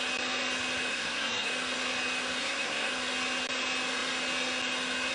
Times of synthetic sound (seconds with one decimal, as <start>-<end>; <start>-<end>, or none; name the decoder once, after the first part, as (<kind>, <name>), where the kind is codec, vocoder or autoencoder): 0.9-1.5 (codec, SNAC); 2.4-2.9